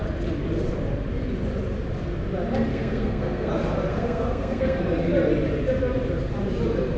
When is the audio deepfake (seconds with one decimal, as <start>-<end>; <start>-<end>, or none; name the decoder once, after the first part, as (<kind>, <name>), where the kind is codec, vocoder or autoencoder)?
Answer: 2.7-3.5 (codec, SNAC); 3.9-4.8